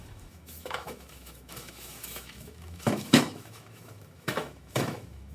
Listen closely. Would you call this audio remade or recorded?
remade